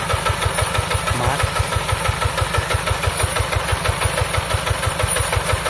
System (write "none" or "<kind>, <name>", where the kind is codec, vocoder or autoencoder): none